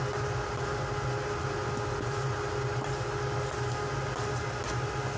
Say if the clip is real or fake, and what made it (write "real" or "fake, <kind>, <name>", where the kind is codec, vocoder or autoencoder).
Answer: real